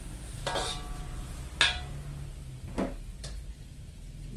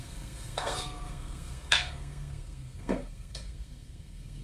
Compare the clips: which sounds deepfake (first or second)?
second